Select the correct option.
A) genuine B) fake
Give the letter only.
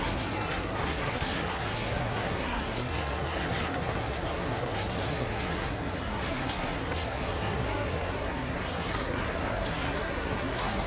B